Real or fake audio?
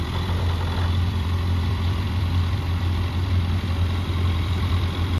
fake